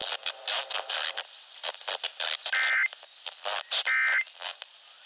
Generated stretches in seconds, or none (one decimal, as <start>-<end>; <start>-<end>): none